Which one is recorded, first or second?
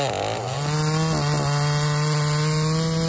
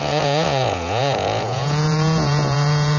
first